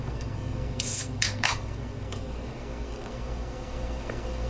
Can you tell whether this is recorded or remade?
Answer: remade